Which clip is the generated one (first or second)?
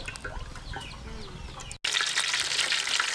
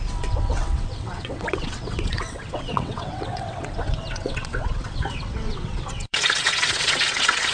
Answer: second